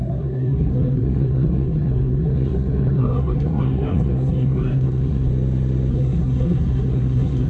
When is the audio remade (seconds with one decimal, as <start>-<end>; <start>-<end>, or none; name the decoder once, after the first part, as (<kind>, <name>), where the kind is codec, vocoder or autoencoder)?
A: 0.0-5.3 (codec, SNAC); 5.9-7.5